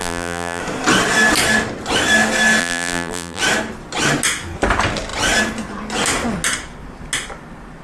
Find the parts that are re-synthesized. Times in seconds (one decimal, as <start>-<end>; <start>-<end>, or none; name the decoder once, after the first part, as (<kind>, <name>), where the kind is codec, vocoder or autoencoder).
0.0-0.6 (vocoder, BigVGAN v2); 2.6-3.4